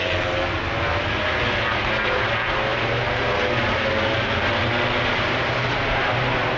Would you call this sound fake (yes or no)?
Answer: no